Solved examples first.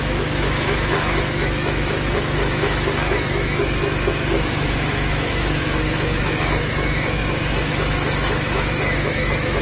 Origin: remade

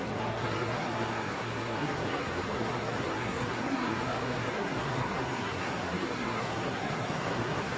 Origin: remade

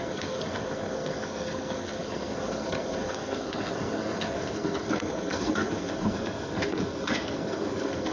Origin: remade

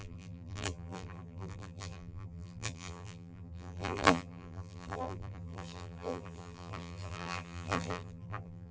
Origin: remade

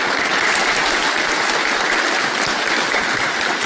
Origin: recorded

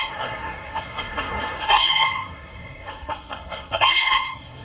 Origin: remade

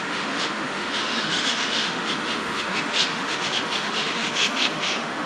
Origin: remade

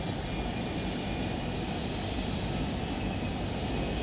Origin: recorded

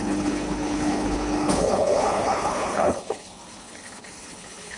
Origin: remade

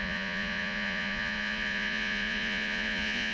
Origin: remade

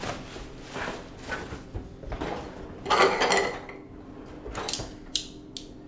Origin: recorded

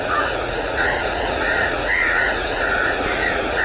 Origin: remade